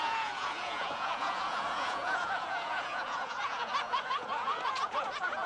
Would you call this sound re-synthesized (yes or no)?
yes